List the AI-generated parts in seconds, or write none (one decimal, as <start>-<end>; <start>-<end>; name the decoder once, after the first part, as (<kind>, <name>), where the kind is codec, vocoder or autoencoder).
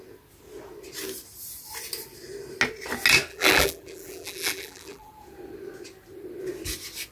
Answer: 3.3-5.1 (vocoder, BigVGAN v2)